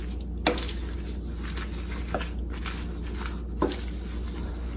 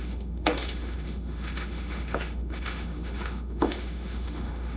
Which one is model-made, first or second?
second